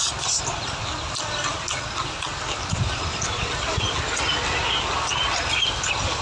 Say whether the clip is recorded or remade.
recorded